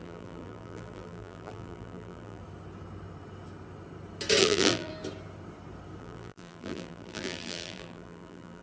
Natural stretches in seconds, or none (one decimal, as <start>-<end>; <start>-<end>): 2.4-4.4; 4.9-6.0